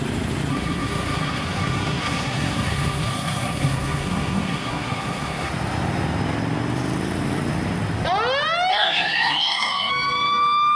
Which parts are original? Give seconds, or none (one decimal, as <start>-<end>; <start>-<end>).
0.0-0.5; 5.5-8.7; 9.9-10.8